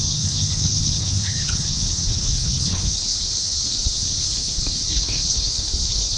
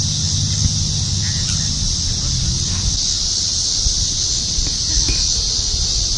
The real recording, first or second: second